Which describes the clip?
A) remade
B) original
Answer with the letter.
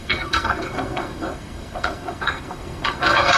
A